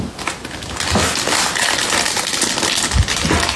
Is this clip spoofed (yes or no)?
no